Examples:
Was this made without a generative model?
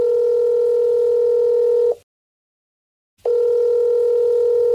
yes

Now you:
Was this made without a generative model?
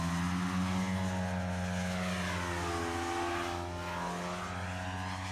yes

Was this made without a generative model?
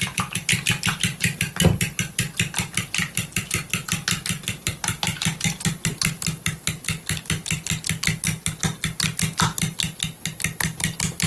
yes